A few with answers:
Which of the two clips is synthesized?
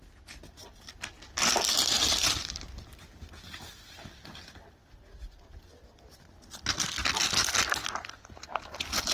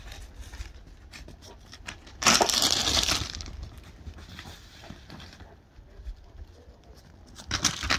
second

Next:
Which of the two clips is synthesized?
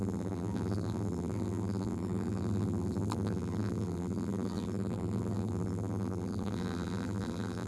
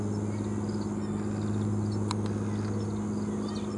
first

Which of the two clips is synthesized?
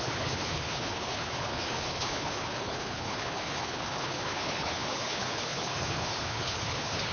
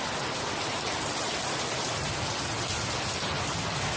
first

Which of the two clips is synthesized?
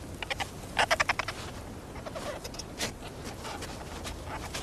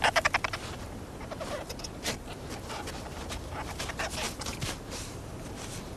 second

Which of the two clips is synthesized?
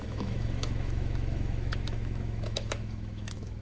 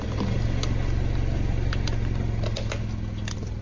first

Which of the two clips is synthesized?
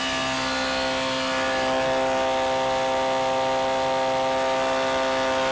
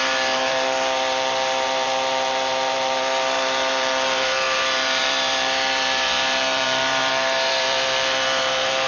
second